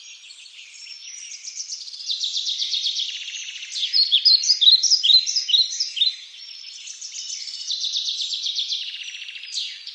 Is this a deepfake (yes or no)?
yes